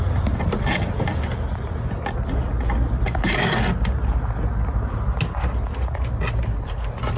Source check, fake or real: real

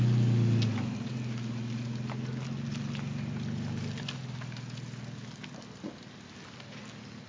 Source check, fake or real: real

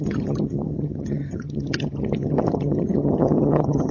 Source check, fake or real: fake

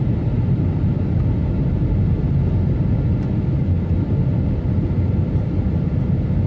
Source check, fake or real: real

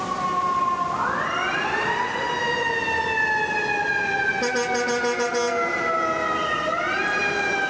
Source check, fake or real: real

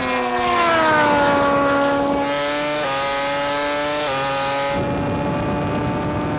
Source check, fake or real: real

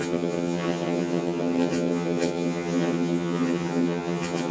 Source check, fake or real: fake